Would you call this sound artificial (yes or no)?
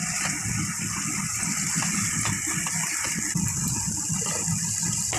no